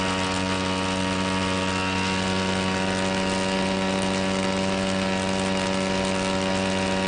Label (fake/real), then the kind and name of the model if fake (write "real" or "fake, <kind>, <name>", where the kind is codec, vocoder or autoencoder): real